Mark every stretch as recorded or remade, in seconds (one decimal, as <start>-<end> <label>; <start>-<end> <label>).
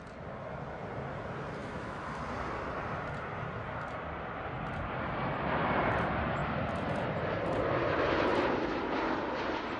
0.0-1.6 recorded; 1.6-2.2 remade; 2.2-9.8 recorded